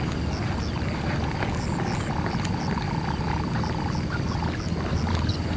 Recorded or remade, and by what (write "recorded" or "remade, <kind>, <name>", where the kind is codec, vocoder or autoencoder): recorded